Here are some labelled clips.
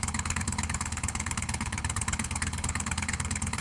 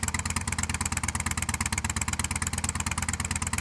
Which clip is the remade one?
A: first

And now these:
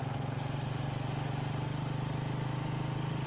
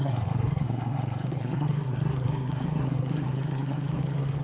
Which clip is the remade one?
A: second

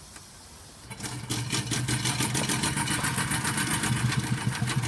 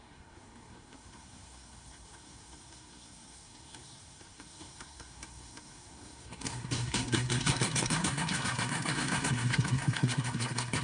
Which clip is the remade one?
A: second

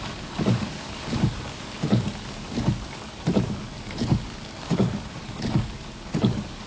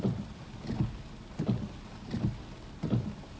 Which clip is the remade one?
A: first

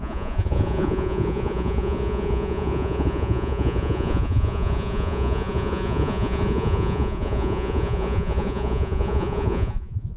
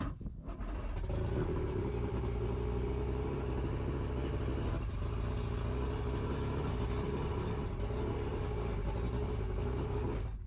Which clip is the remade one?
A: first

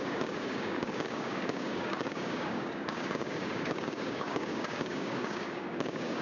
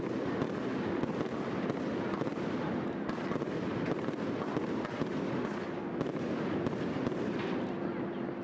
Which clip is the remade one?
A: first